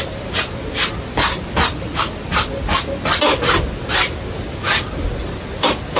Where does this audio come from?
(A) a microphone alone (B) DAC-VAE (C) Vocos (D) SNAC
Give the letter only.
A